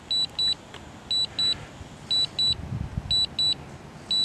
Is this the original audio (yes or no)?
yes